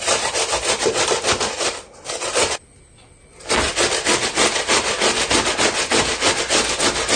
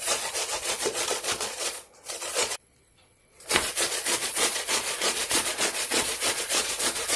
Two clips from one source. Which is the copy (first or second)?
second